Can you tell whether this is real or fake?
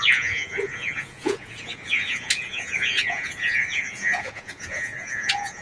fake